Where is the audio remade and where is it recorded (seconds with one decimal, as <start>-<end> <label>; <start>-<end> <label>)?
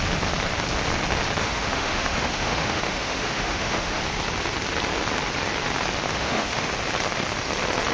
0.0-1.4 recorded; 1.4-4.0 remade; 4.0-6.1 recorded; 6.1-6.7 remade; 6.7-7.9 recorded